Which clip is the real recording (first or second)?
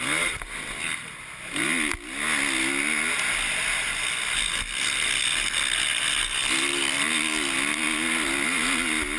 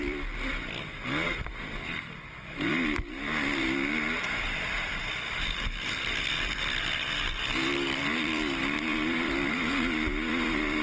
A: first